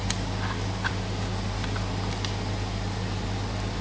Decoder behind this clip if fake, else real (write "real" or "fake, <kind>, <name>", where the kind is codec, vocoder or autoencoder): real